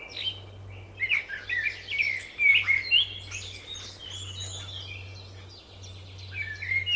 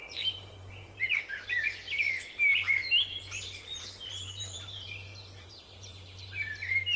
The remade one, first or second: second